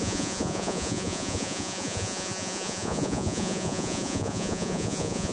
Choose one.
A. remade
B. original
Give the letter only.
A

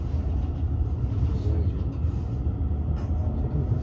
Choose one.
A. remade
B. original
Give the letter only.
B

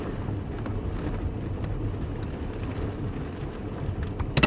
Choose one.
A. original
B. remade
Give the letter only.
A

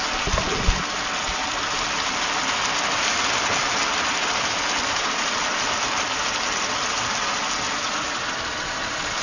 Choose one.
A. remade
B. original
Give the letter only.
B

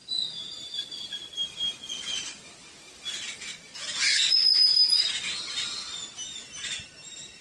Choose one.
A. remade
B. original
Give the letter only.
B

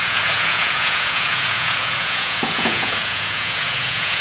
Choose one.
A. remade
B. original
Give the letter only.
A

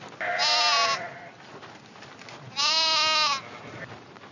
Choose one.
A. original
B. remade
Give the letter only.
A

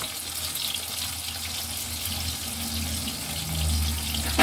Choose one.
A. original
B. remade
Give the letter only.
A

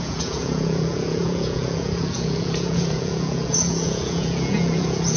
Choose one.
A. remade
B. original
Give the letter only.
A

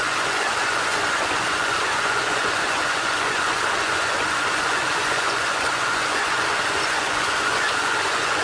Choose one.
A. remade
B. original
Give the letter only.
A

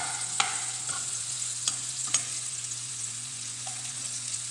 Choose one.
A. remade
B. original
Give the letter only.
A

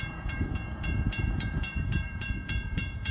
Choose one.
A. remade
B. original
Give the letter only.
A